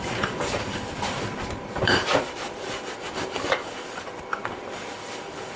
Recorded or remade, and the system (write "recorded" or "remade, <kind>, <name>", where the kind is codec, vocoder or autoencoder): remade, vocoder, BigVGAN v2